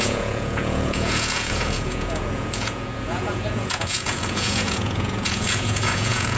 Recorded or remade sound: remade